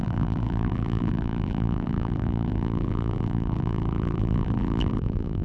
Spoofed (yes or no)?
yes